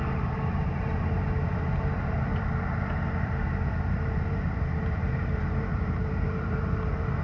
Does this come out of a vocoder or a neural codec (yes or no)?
yes